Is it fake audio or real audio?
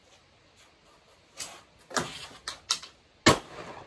real